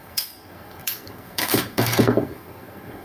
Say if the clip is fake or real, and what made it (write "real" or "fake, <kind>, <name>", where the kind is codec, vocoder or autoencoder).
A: fake, codec, SNAC